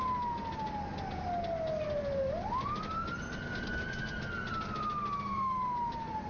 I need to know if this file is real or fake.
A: real